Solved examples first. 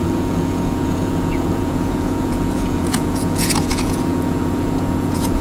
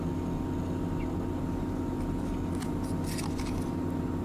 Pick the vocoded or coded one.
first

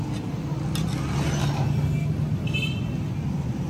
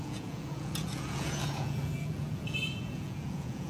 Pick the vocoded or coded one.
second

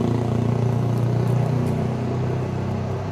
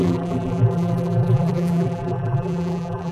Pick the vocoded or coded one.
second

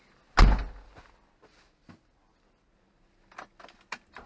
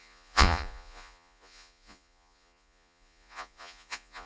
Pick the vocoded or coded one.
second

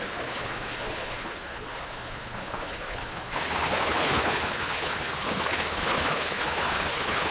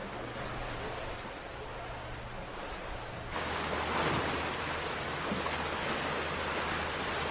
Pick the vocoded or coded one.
first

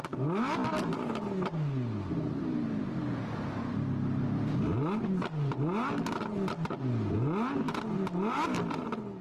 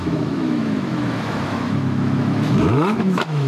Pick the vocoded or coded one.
second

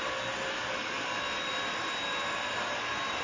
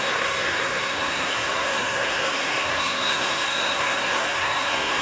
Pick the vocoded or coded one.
second